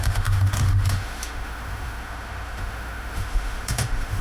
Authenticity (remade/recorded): remade